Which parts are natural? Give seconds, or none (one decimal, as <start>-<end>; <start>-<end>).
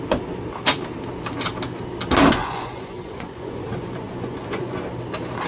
0.0-2.4; 4.8-5.5